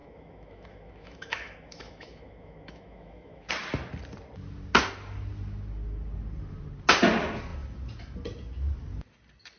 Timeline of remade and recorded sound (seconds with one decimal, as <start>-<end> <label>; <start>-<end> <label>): 0.0-3.5 remade; 3.5-9.6 recorded